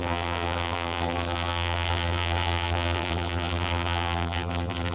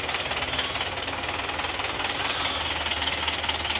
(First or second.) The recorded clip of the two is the second